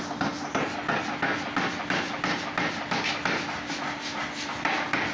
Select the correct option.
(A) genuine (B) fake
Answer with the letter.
A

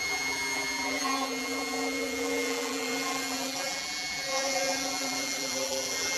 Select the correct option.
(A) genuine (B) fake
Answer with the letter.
B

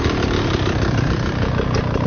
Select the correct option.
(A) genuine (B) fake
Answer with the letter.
A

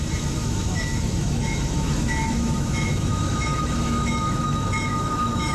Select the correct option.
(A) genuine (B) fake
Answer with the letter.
B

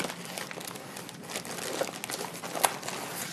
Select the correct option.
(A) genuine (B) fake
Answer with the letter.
A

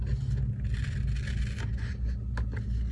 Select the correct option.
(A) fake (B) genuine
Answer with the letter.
B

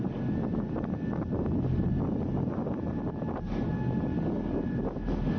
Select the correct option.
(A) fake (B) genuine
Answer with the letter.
B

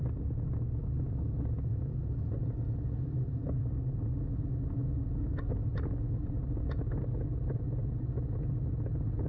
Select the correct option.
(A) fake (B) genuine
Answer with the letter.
B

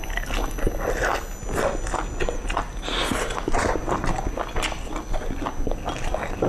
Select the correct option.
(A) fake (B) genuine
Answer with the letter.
B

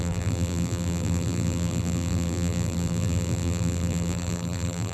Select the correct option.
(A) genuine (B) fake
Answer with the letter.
B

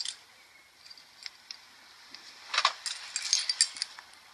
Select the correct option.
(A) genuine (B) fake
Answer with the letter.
A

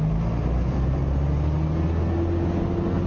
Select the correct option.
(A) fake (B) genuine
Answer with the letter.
B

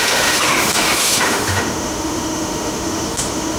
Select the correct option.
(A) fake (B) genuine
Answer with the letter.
A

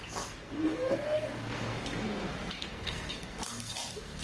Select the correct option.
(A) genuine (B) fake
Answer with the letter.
B